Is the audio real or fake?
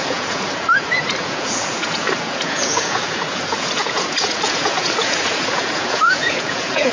fake